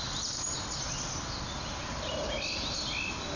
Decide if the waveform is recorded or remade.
recorded